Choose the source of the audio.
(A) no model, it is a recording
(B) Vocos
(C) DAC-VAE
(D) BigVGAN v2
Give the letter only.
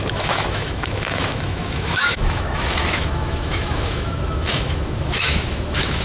C